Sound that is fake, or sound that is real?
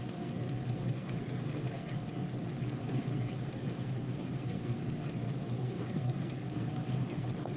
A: fake